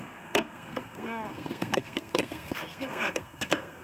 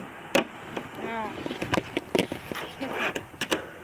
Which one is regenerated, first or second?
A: first